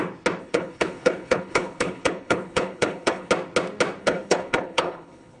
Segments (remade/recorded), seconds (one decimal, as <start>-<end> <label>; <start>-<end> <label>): 0.0-0.4 recorded; 0.4-3.3 remade; 3.3-4.0 recorded; 4.0-5.4 remade